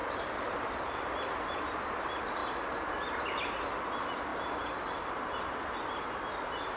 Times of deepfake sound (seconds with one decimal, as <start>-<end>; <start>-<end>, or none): 0.0-1.3